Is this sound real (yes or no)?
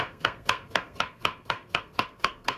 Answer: no